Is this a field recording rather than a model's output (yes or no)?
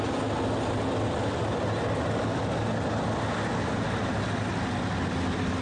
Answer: yes